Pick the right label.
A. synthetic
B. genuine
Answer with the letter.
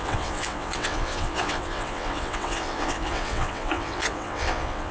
A